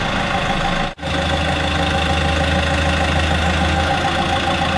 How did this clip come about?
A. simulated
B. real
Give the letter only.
B